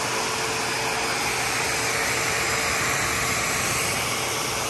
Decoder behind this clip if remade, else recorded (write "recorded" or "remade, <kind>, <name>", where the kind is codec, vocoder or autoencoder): recorded